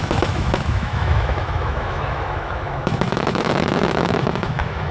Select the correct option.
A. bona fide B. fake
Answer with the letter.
B